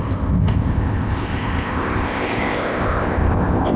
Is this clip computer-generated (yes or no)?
yes